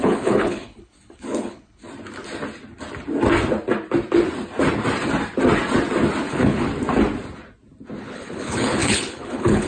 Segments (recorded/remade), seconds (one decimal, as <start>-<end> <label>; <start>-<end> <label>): 0.0-1.8 remade; 1.8-6.3 recorded; 6.3-6.7 remade; 6.7-8.0 recorded; 8.0-9.7 remade